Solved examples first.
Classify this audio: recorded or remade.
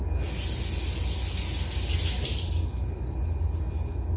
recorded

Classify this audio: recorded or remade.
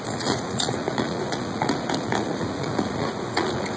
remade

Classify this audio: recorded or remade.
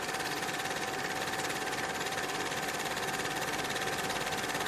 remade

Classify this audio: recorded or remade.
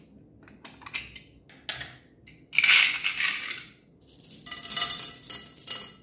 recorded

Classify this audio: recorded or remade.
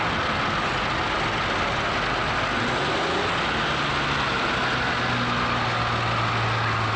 recorded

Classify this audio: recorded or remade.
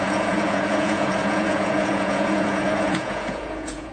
remade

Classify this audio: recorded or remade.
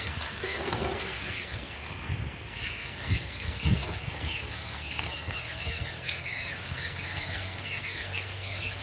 remade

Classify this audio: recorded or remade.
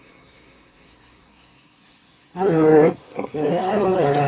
remade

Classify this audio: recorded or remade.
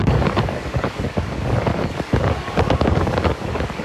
remade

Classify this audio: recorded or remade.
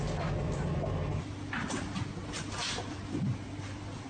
recorded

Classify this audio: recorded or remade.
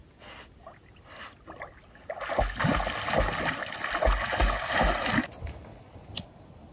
recorded